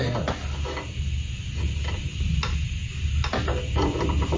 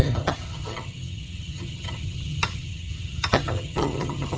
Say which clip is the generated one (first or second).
second